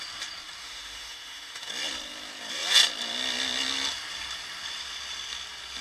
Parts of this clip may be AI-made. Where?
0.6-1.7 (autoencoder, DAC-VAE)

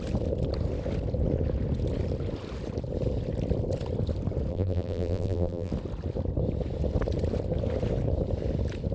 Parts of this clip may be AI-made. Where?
4.5-5.7 (vocoder, BigVGAN v2)